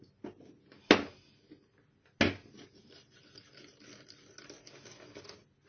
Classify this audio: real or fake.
real